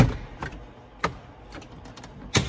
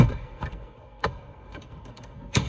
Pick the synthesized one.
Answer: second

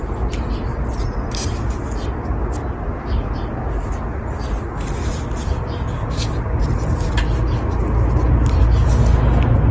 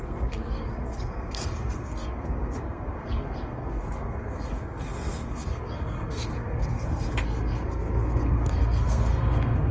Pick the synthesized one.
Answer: second